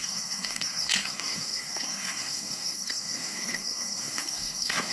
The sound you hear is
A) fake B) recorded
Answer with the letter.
A